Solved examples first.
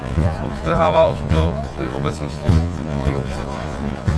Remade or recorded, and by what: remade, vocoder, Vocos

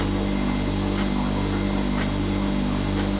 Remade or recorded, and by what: recorded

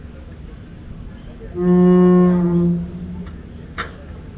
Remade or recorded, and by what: recorded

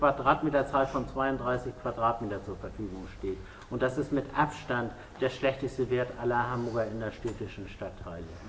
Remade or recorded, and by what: recorded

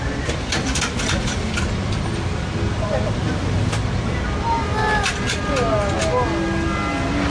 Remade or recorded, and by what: recorded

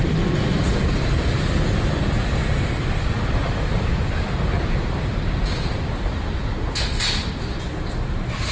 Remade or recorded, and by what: recorded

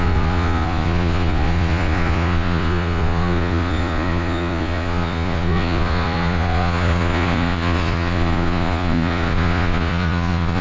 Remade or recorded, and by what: remade, vocoder, Vocos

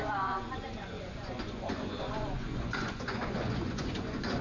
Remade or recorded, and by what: remade, vocoder, Vocos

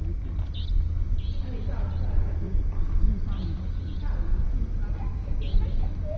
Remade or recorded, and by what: recorded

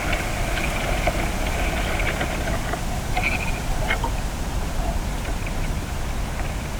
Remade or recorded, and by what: recorded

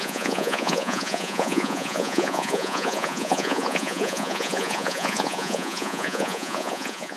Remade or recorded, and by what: remade, vocoder, Vocos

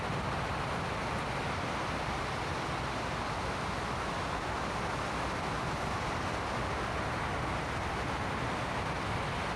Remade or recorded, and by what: recorded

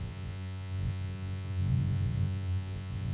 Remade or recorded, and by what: remade, vocoder, Vocos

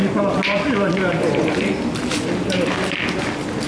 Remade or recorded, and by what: recorded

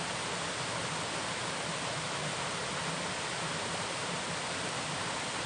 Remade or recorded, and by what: recorded